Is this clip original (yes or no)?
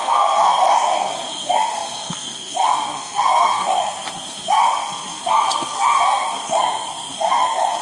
no